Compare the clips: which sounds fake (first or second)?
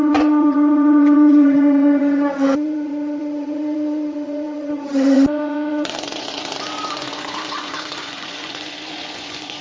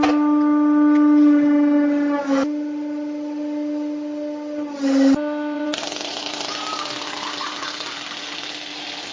first